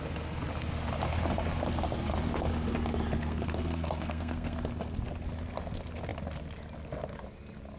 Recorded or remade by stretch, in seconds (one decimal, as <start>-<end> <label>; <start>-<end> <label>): 0.0-3.2 recorded; 3.2-4.6 remade; 4.6-7.8 recorded